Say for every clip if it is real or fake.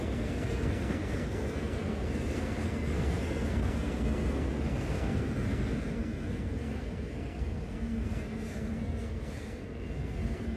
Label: fake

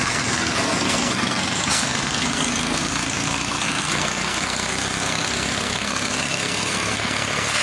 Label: fake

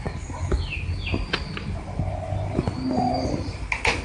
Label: real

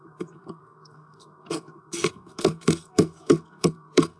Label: fake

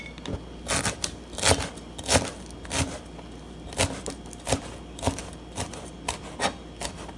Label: real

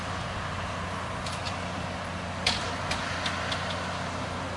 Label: real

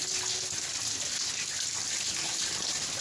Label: real